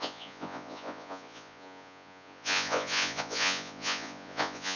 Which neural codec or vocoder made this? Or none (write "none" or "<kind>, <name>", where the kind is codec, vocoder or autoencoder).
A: vocoder, Vocos